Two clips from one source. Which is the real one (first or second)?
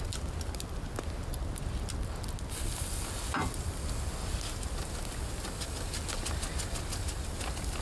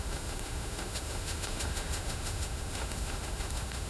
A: first